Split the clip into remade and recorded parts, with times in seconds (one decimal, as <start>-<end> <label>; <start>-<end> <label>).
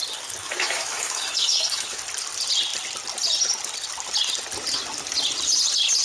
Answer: 0.0-0.4 recorded; 0.4-2.0 remade; 2.0-6.0 recorded